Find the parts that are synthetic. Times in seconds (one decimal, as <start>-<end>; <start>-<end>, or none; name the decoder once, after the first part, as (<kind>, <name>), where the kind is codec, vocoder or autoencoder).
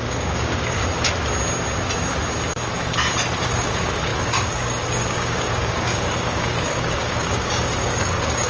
0.0-0.8 (codec, DAC); 3.4-8.5